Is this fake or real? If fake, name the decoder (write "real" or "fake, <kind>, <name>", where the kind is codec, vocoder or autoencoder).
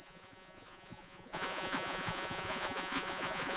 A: fake, vocoder, Vocos